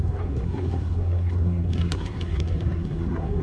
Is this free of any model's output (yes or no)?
no